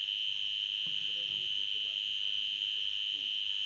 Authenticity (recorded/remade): recorded